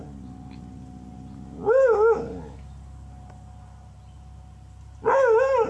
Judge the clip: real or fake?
real